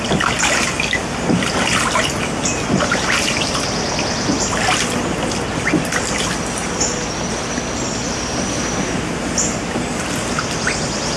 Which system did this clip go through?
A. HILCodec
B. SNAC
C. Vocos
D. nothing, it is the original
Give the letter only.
D